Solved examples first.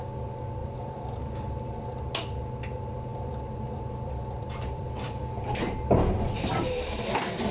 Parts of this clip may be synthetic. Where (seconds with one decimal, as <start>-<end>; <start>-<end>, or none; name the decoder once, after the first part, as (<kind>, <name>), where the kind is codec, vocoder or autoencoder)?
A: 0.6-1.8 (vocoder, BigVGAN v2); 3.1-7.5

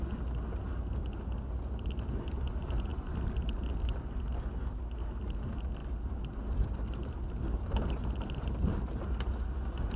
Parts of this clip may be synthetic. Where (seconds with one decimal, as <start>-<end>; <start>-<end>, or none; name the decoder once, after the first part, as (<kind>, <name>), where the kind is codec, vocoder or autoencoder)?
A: 5.8-9.2 (vocoder, BigVGAN v2)

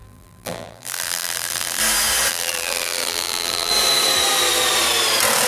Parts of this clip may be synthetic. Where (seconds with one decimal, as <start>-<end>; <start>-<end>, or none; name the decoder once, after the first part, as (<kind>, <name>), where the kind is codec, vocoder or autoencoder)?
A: 0.0-1.8 (vocoder, BigVGAN v2); 2.3-3.7